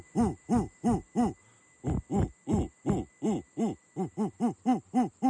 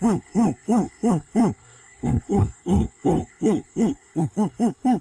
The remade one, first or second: second